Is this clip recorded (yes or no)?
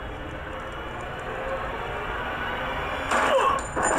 yes